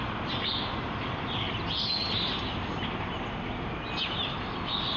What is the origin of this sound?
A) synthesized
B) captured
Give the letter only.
B